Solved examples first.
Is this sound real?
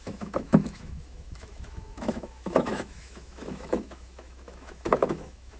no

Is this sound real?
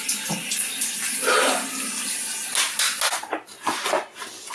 yes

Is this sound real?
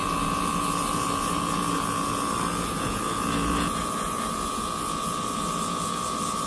no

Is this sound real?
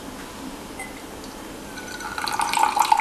yes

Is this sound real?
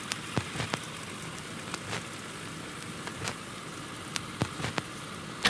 yes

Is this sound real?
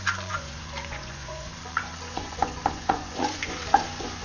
no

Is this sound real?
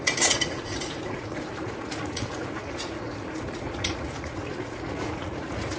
no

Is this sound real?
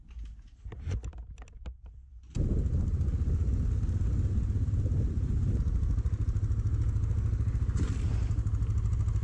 yes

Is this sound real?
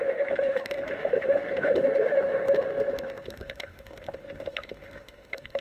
no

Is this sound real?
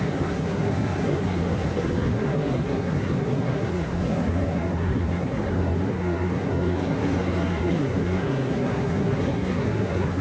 no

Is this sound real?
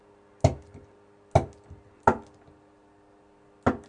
yes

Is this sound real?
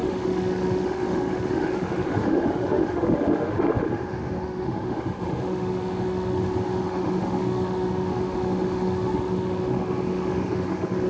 no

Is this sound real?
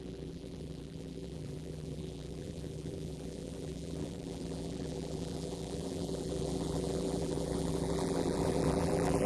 no